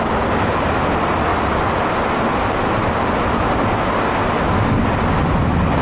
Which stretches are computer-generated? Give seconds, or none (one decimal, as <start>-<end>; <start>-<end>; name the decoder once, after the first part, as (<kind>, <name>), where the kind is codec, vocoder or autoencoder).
none